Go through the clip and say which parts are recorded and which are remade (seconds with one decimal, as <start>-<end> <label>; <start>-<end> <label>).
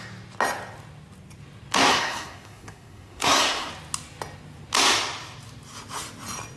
0.0-1.9 recorded; 1.9-3.7 remade; 3.7-6.6 recorded